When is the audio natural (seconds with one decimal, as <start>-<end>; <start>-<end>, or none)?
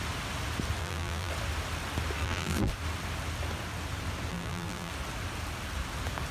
0.0-0.8; 1.3-2.2; 2.7-4.3; 4.9-6.3